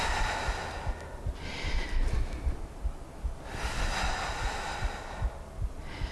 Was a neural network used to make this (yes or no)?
no